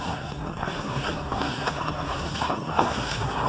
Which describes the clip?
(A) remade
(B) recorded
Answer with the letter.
A